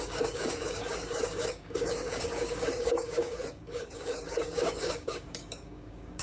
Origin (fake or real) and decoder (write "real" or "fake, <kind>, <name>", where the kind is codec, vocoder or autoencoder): fake, codec, DAC